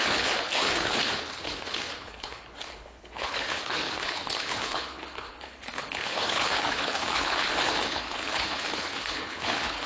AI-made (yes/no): yes